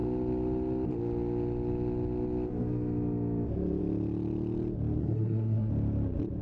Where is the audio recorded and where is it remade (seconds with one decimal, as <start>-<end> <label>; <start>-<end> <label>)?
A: 0.0-5.0 recorded; 5.0-5.7 remade; 5.7-6.4 recorded

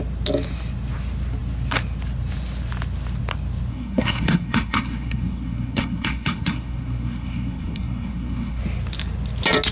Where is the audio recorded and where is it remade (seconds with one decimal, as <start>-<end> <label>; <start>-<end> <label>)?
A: 0.0-3.7 recorded; 3.7-8.6 remade; 8.6-9.7 recorded

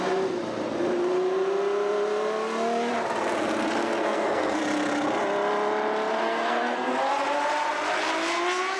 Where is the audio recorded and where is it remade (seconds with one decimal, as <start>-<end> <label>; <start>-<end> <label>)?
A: 0.0-3.8 recorded; 3.8-4.6 remade; 4.6-6.1 recorded; 6.1-6.9 remade; 6.9-8.8 recorded